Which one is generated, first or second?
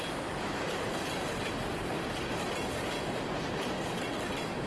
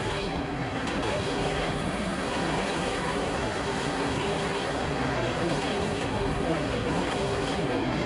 second